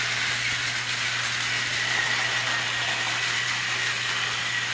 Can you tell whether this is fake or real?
real